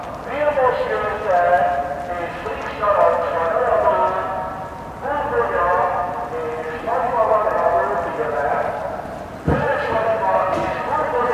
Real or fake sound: real